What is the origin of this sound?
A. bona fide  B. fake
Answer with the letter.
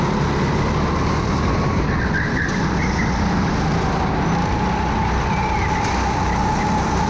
A